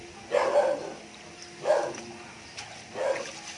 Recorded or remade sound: recorded